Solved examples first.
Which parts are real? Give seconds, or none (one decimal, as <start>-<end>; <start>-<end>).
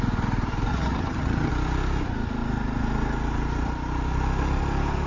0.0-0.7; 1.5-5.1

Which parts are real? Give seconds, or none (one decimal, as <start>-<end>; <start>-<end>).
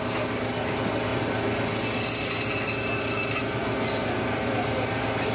0.0-5.3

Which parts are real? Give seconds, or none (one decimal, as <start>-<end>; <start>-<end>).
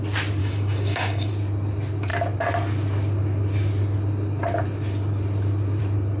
0.0-0.4; 1.3-6.2